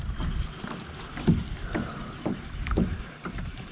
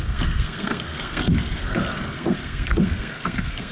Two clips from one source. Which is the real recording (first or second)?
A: first